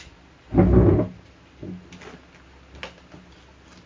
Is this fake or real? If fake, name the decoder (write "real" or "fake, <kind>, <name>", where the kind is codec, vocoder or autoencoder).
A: real